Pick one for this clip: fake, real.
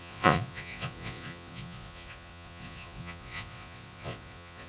fake